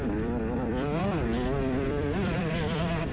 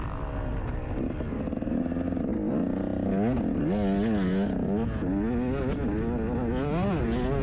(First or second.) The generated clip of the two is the first